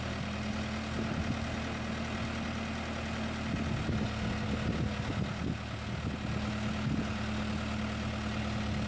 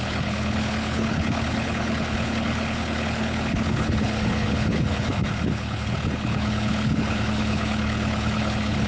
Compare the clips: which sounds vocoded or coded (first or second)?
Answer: second